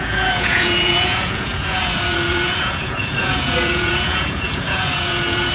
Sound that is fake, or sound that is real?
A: fake